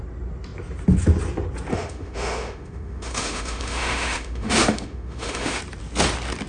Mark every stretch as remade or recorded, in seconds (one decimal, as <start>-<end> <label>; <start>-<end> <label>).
0.0-1.7 recorded; 1.7-5.6 remade; 5.6-6.5 recorded